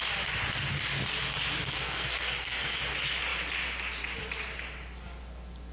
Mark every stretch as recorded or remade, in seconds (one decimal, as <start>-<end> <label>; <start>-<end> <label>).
0.0-1.6 recorded; 1.6-2.8 remade; 2.8-5.7 recorded